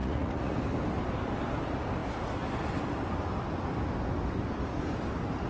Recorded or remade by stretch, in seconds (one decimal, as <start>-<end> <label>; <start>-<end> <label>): 0.0-0.6 remade; 0.6-5.5 recorded